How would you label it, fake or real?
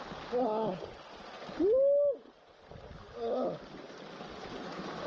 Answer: real